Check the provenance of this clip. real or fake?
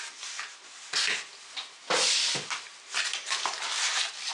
real